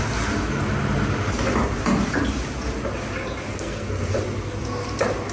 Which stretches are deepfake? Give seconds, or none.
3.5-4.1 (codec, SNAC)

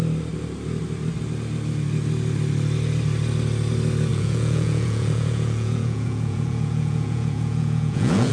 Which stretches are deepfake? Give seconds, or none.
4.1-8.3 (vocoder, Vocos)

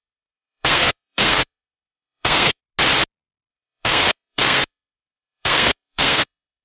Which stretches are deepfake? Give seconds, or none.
0.0-2.6 (codec, SNAC); 3.5-6.6